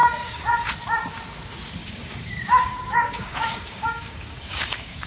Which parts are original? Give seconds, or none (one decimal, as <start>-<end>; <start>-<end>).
0.7-1.8